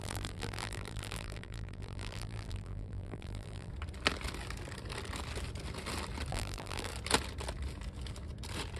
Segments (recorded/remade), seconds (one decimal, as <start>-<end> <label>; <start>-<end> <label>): 0.0-3.7 remade; 3.7-6.3 recorded; 6.3-6.9 remade; 6.9-8.8 recorded